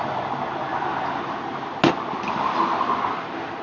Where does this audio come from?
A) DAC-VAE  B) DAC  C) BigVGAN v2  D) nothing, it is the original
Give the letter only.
D